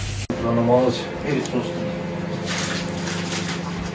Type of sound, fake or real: real